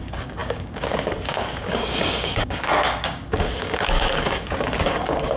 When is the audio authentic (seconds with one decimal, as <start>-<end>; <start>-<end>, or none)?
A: none